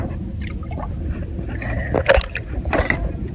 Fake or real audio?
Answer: real